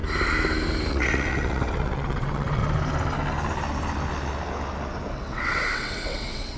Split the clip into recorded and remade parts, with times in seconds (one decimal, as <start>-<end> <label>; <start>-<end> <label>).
0.0-0.9 recorded; 0.9-2.6 remade; 2.6-5.1 recorded; 5.1-6.6 remade